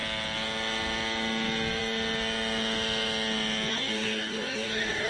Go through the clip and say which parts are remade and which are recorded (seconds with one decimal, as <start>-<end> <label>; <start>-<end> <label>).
0.0-3.7 recorded; 3.7-5.1 remade